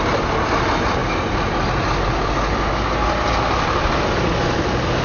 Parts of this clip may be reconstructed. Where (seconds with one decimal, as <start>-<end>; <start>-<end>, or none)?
none